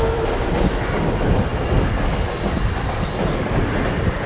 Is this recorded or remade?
recorded